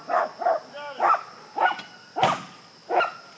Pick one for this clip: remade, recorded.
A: recorded